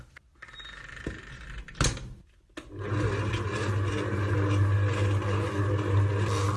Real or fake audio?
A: real